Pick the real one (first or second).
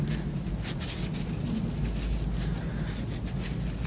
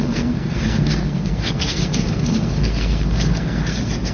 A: first